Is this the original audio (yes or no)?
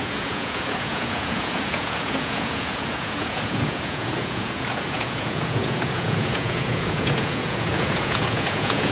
no